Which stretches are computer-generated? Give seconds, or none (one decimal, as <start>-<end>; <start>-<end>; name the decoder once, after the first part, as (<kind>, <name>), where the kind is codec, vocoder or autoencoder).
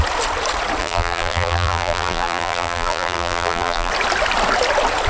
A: 0.8-3.9 (vocoder, BigVGAN v2)